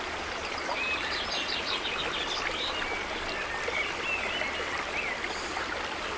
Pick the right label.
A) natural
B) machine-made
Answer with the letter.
A